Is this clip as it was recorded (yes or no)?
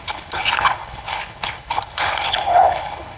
no